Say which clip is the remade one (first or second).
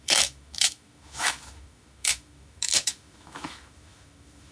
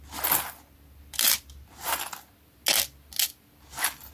first